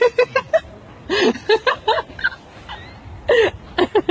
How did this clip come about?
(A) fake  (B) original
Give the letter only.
B